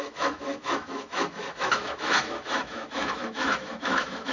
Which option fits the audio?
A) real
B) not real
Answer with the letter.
B